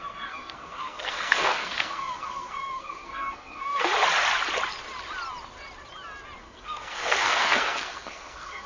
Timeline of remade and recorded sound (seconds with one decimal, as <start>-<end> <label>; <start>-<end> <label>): 0.0-3.9 remade; 3.9-6.4 recorded; 6.4-8.7 remade